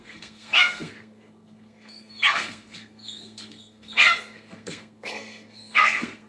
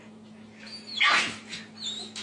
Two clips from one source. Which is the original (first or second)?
second